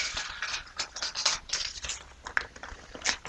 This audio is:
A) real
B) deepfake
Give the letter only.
A